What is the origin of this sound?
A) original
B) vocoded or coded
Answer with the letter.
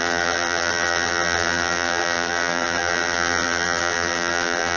B